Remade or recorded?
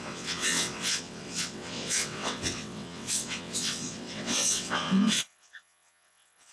remade